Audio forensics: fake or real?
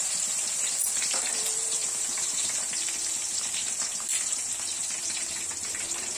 fake